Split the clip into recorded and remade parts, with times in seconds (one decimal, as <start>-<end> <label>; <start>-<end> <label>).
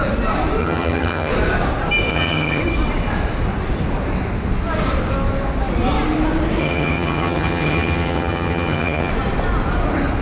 0.0-0.6 recorded; 0.6-1.3 remade; 1.3-2.1 recorded; 2.1-2.6 remade; 2.6-6.6 recorded; 6.6-9.1 remade; 9.1-10.2 recorded